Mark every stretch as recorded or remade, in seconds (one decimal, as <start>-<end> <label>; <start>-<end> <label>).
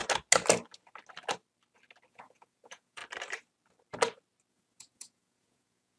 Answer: 0.0-2.1 recorded; 2.1-3.0 remade; 3.0-4.5 recorded; 4.5-6.0 remade